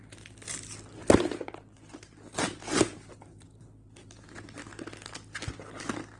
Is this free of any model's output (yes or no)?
yes